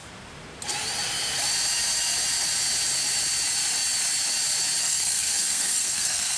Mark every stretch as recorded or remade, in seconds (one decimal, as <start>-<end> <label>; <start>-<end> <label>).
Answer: 0.0-4.8 recorded; 4.8-6.4 remade